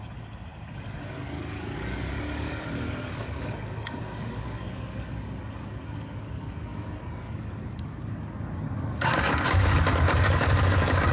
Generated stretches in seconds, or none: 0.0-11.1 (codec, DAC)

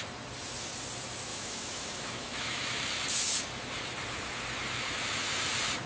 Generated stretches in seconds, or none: 1.3-2.8 (autoencoder, DAC-VAE)

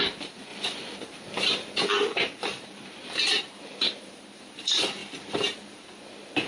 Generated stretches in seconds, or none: 0.0-5.0 (vocoder, BigVGAN v2)

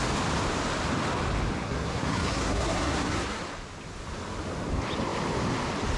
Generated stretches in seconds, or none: 1.6-3.4 (codec, SNAC)

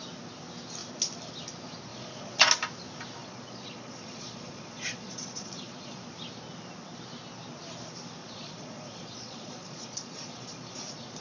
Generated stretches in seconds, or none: 1.9-2.5 (vocoder, Vocos); 3.2-6.0; 8.2-11.2

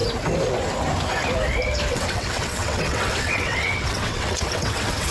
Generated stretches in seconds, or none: 1.9-5.1 (vocoder, WaveNeXt)